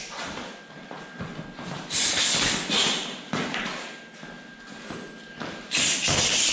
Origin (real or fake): real